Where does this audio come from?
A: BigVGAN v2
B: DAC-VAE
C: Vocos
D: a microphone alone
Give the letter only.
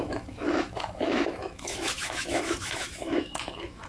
B